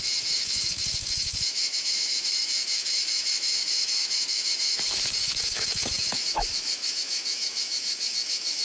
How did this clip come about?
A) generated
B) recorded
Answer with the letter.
A